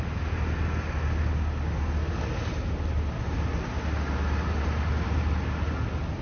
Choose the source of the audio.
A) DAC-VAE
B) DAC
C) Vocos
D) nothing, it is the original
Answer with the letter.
D